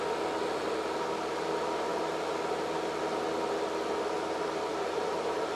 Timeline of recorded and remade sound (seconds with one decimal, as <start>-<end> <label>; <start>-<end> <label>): 0.0-4.7 recorded; 4.7-5.6 remade